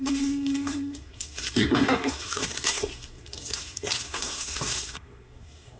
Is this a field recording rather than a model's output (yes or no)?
no